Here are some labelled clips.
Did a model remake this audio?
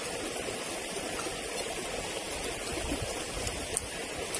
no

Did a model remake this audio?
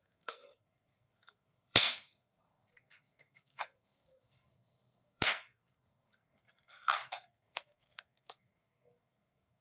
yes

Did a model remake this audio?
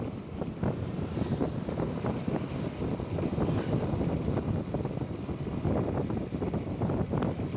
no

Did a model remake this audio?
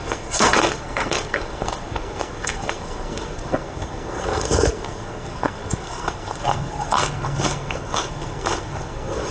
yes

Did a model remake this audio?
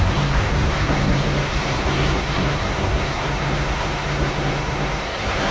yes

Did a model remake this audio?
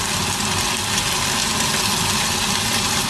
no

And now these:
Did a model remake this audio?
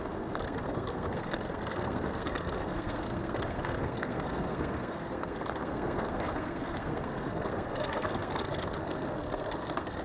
yes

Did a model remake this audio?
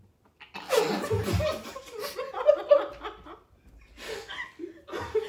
no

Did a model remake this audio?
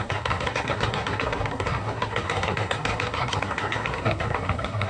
yes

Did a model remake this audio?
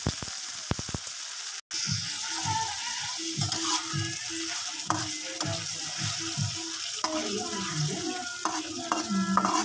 no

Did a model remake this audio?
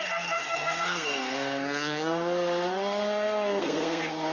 yes